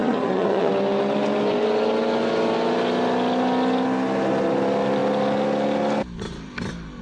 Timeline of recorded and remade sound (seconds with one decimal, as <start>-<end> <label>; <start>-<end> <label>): 0.0-0.7 remade; 0.7-7.0 recorded